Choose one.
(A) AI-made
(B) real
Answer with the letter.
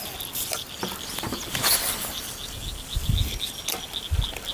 B